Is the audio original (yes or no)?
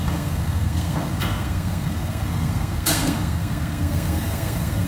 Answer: no